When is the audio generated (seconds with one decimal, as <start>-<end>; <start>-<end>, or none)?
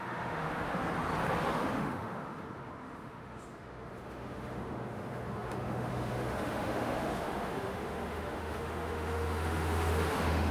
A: 0.0-0.8; 1.4-10.5